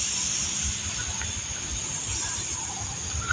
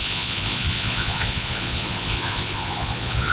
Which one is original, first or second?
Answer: first